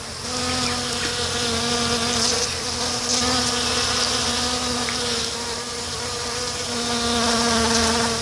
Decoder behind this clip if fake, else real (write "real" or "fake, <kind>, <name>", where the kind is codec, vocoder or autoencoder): real